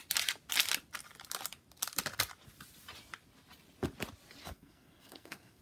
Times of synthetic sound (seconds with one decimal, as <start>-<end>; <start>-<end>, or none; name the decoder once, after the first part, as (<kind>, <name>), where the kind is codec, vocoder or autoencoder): 4.4-5.6 (codec, SNAC)